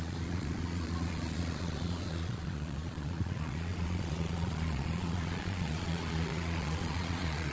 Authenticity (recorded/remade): remade